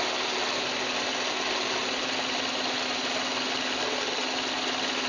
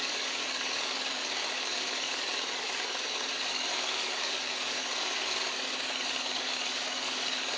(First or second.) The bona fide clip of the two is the first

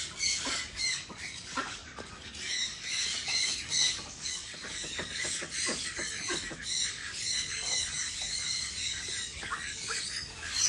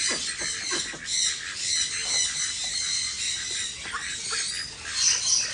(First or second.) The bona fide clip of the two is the second